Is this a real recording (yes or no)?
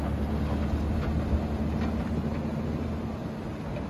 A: yes